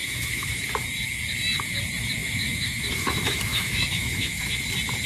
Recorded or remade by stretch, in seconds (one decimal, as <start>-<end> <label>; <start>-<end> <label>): 0.0-0.6 remade; 0.6-2.2 recorded; 2.2-4.6 remade; 4.6-5.1 recorded